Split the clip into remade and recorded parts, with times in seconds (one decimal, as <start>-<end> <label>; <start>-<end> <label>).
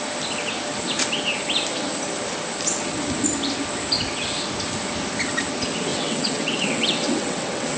0.0-5.9 recorded; 5.9-7.8 remade